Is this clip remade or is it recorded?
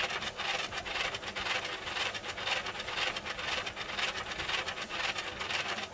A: recorded